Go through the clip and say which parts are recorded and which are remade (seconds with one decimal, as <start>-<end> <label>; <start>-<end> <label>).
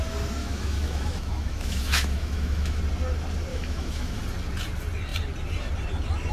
0.0-0.4 recorded; 0.4-2.8 remade; 2.8-3.5 recorded; 3.5-4.2 remade; 4.2-6.3 recorded